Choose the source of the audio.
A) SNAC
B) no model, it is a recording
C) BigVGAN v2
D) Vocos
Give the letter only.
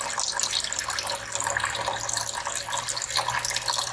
B